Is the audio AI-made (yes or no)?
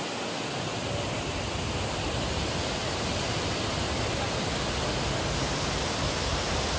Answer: no